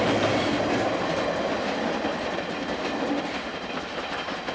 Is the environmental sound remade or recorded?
recorded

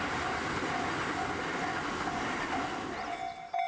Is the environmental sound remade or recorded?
recorded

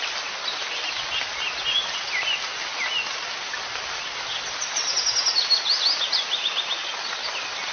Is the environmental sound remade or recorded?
recorded